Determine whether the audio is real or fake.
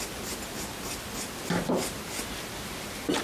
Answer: real